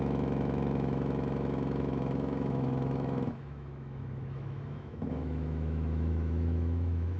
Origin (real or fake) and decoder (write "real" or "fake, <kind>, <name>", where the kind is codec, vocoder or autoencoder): fake, autoencoder, DAC-VAE